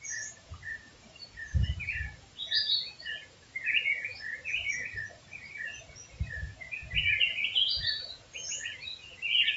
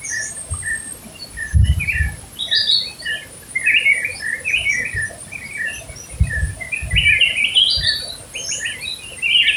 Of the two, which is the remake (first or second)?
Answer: first